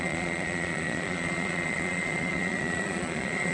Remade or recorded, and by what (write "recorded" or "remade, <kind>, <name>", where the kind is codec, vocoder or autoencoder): remade, vocoder, Vocos